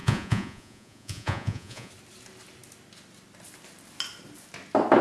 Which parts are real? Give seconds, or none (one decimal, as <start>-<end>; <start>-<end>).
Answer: 1.9-5.0